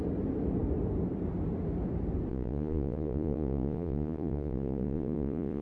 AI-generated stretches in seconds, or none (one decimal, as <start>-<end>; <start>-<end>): 2.3-5.6